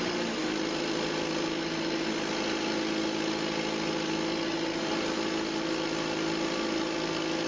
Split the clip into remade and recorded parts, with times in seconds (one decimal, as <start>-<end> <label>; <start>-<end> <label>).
0.0-7.5 recorded